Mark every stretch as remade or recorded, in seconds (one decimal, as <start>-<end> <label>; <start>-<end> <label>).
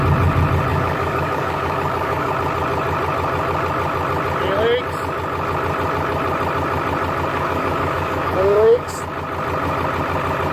0.0-0.7 recorded; 0.7-2.3 remade; 2.3-7.3 recorded; 7.3-9.0 remade; 9.0-10.5 recorded